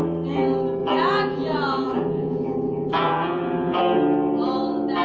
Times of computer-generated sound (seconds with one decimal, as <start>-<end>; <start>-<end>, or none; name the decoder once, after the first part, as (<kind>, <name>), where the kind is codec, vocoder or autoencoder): 0.8-3.8 (vocoder, Vocos)